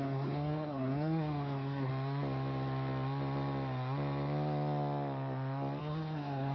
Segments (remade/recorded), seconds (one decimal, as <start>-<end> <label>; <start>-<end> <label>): 0.0-1.9 remade; 1.9-5.8 recorded; 5.8-6.5 remade